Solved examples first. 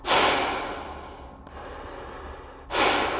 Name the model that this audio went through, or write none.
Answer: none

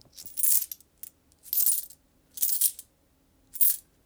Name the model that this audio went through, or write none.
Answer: none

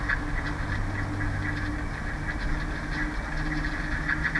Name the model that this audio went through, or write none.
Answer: none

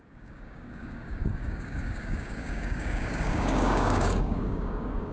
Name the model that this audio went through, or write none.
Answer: codec, DAC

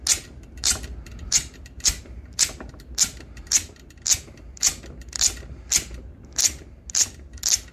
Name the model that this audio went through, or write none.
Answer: none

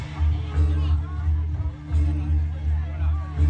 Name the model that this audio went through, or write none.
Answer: none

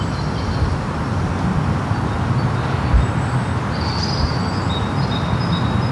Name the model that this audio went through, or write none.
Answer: none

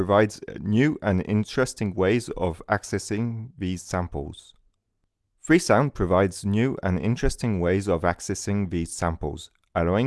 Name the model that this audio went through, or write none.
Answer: none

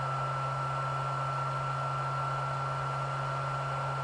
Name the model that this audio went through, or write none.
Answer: none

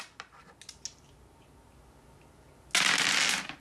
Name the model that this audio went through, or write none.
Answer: none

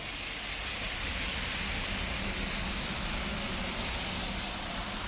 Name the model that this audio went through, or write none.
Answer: none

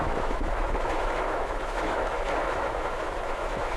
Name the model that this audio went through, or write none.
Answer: autoencoder, DAC-VAE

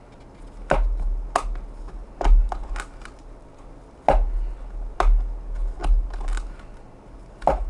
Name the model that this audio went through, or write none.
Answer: none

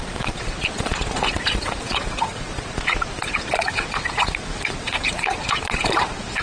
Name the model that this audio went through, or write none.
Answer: vocoder, Vocos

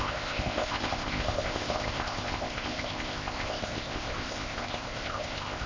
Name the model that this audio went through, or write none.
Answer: codec, ZipCodec